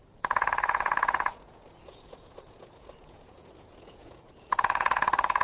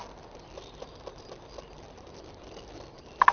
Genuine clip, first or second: second